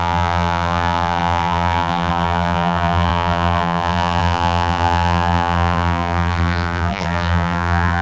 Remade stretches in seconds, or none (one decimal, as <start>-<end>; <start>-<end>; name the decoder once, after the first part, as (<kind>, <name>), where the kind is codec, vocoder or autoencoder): 0.0-8.0 (vocoder, BigVGAN v2)